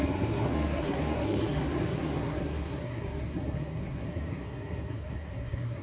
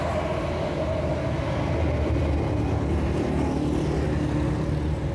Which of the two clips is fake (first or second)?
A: first